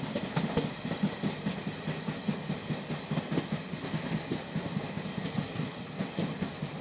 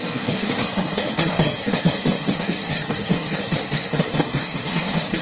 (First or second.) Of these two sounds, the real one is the first